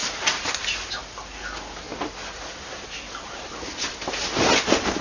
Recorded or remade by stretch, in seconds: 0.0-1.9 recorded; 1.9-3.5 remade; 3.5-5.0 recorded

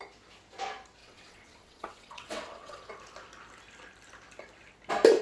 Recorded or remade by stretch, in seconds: 0.0-1.0 recorded; 1.0-2.9 remade; 2.9-5.2 recorded